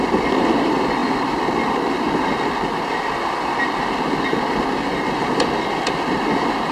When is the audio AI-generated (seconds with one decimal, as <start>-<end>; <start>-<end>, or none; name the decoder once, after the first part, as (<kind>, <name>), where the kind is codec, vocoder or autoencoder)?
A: 0.0-1.0 (vocoder, BigVGAN v2); 4.2-6.7